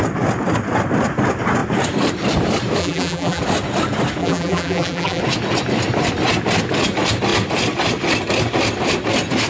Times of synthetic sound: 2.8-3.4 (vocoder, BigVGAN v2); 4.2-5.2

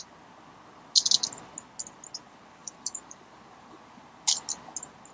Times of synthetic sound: 2.6-4.0 (vocoder, BigVGAN v2)

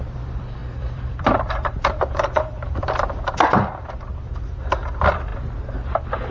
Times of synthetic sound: 0.0-5.3 (vocoder, BigVGAN v2)

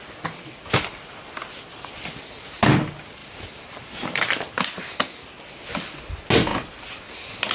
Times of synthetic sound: 3.2-4.6 (vocoder, BigVGAN v2)

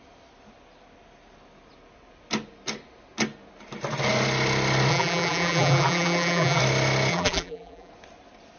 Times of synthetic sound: 4.9-6.6 (vocoder, BigVGAN v2); 7.1-7.9